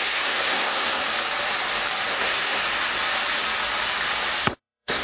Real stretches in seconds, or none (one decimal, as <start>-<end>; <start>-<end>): 1.0-2.1; 2.6-4.4